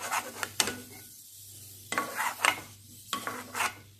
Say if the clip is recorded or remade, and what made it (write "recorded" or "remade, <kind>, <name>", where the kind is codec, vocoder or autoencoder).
remade, vocoder, BigVGAN v2